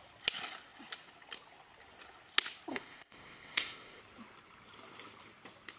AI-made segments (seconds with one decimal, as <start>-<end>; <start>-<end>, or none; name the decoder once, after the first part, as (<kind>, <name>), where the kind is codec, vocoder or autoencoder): 2.7-4.0 (codec, ZipCodec)